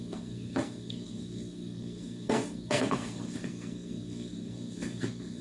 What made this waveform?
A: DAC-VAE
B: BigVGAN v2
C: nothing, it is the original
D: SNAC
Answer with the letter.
D